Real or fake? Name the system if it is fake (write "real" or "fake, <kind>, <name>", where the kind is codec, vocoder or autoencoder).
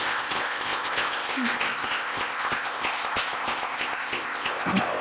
fake, codec, ZipCodec